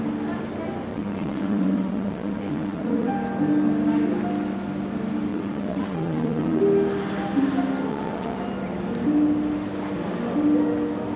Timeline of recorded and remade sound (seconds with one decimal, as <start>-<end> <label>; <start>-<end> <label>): 0.0-0.9 recorded; 0.9-3.1 remade; 3.1-5.3 recorded; 5.3-6.6 remade; 6.6-7.9 recorded; 7.9-8.4 remade; 8.4-11.2 recorded